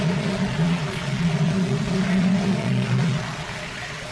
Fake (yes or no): yes